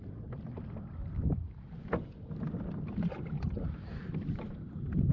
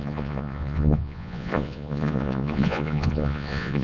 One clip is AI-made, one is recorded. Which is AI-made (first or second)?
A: second